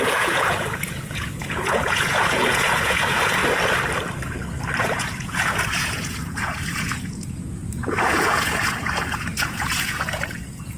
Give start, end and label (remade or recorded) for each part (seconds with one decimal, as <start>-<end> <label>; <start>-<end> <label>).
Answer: 0.0-3.4 remade; 3.4-4.8 recorded; 4.8-10.8 remade

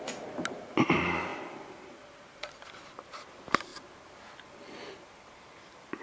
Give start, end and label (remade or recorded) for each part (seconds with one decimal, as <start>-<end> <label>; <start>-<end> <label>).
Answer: 0.0-6.0 recorded

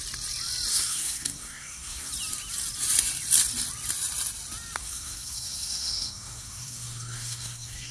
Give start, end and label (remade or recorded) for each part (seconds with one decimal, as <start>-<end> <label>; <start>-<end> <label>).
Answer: 0.0-0.7 recorded; 0.7-2.1 remade; 2.1-4.8 recorded; 4.8-7.9 remade

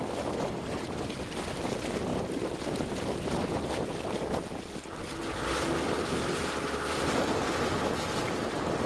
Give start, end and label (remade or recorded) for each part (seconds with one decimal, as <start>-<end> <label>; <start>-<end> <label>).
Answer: 0.0-2.1 recorded; 2.1-3.6 remade; 3.6-8.9 recorded